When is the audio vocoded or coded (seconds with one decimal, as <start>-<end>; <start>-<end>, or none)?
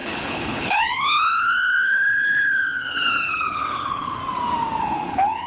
0.0-4.2; 4.8-5.5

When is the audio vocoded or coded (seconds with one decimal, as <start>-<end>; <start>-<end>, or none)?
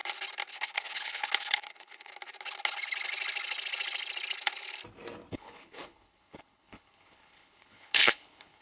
0.5-2.1; 5.3-8.6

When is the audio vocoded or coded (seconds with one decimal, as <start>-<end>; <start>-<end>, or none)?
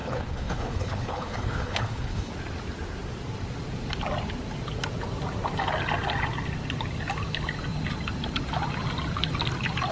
0.0-2.3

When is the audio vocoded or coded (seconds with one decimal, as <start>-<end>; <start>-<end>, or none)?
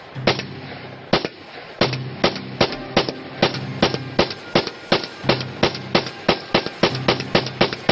none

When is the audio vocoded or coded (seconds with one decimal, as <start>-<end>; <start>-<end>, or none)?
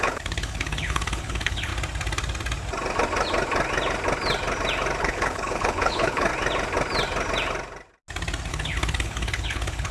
0.0-1.7; 5.0-6.3; 8.5-9.9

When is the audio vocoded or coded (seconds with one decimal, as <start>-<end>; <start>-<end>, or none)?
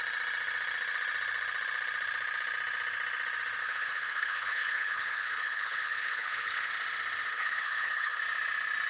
3.6-6.7; 7.3-8.2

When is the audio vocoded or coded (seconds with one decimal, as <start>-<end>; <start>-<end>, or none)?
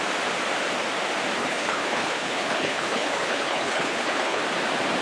1.4-4.4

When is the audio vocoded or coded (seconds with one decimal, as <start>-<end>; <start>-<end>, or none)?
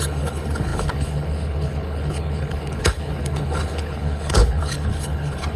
0.0-5.6